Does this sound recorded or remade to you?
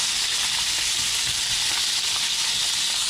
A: recorded